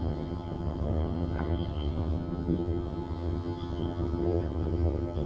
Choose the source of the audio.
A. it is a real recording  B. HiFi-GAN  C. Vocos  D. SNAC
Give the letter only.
B